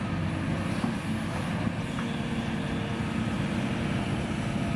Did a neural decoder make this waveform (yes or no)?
no